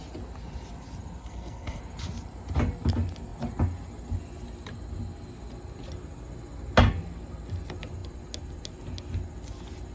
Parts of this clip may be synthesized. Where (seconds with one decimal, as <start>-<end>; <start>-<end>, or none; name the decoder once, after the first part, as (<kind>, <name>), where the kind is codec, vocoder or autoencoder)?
1.2-1.8 (codec, SNAC)